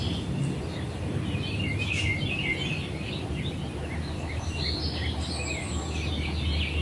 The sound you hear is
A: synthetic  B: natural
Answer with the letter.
B